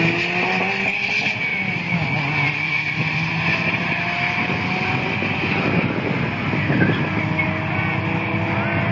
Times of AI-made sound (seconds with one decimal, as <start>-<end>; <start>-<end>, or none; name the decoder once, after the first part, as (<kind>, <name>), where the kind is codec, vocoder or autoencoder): 1.5-3.3 (vocoder, BigVGAN v2)